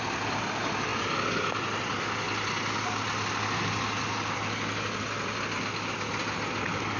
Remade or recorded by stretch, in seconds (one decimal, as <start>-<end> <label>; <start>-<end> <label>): 0.0-7.0 recorded